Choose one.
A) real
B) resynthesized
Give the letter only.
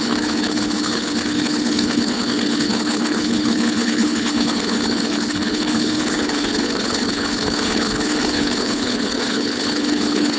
B